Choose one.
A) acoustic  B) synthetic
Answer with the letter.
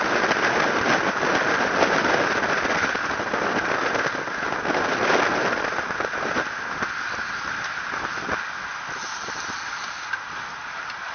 A